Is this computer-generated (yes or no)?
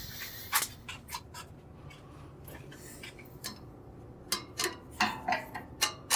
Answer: no